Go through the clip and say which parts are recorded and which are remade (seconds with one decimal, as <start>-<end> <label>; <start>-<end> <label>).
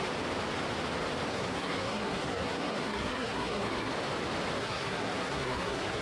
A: 0.0-1.3 recorded; 1.3-3.9 remade; 3.9-4.6 recorded; 4.6-6.0 remade